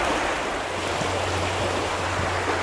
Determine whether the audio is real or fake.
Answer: real